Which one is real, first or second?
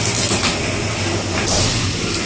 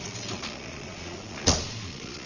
first